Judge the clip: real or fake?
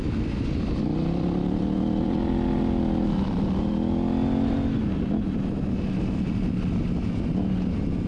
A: real